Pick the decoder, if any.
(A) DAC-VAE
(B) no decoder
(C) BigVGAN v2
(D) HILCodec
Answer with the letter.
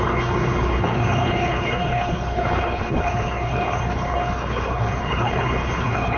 D